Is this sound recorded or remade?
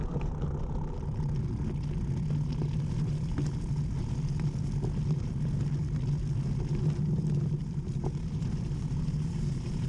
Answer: recorded